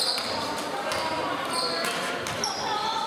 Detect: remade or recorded recorded